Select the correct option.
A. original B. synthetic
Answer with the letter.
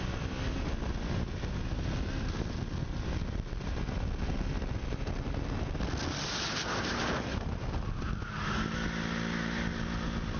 A